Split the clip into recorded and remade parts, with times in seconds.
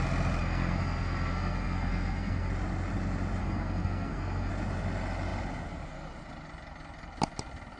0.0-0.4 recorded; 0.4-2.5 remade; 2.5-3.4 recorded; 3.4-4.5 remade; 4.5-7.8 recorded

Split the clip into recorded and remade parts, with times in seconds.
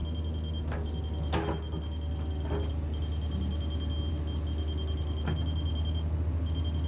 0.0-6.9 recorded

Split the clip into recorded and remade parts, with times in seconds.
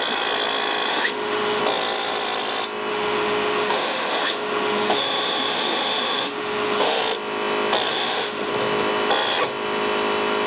0.0-0.9 recorded; 0.9-1.6 remade; 1.6-2.9 recorded; 2.9-7.0 remade; 7.0-7.9 recorded; 7.9-8.5 remade; 8.5-10.5 recorded